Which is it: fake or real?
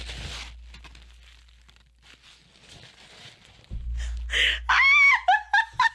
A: real